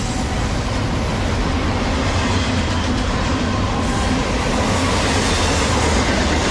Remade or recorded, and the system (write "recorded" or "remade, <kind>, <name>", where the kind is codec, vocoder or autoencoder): recorded